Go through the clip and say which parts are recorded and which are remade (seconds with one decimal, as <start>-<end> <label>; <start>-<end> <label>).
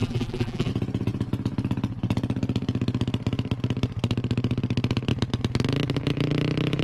0.0-0.7 remade; 0.7-6.8 recorded